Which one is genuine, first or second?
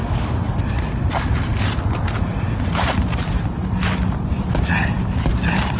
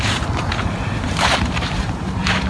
first